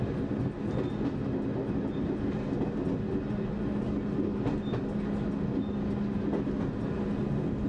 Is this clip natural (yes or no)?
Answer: yes